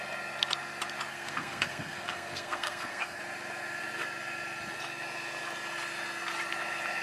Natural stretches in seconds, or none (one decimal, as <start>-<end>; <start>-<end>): 0.0-1.1; 3.2-7.0